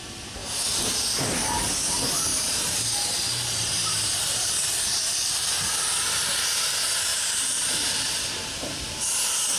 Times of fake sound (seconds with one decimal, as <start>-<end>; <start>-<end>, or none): 0.4-1.2; 2.3-5.5; 7.1-8.2